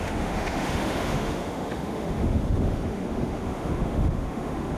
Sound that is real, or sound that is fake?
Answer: fake